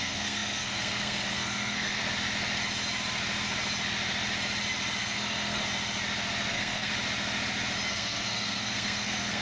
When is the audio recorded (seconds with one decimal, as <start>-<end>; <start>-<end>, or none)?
2.0-5.0; 5.6-6.5; 6.9-7.9